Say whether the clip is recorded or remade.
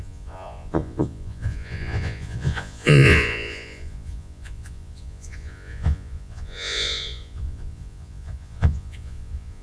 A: remade